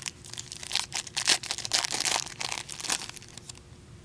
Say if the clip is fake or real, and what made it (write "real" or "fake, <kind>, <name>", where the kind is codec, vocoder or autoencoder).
real